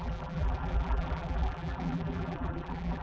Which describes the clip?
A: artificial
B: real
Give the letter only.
A